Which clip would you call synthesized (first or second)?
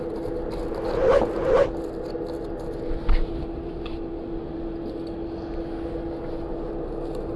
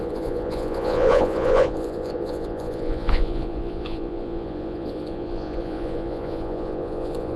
second